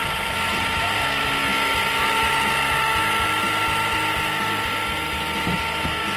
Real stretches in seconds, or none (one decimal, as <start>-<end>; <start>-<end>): 0.8-6.2